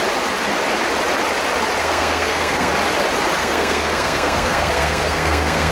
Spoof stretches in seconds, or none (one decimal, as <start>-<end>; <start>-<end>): 1.8-2.7; 3.4-5.7